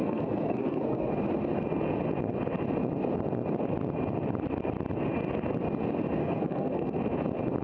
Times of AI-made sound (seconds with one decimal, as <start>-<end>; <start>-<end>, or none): 0.0-1.1; 6.2-7.0